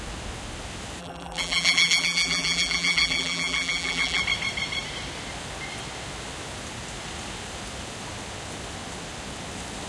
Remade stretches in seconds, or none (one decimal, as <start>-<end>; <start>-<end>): 1.0-4.2